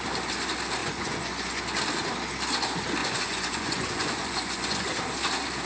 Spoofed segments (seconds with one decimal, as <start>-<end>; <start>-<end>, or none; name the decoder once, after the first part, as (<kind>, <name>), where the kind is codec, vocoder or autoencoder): 0.8-1.6 (vocoder, Vocos); 3.0-4.9